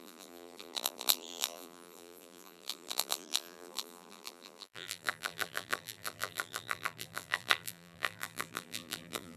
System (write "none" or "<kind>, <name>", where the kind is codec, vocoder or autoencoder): vocoder, BigVGAN v2